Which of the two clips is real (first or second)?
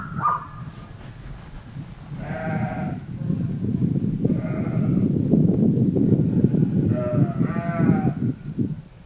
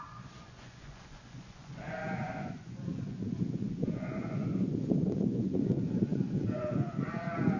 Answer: first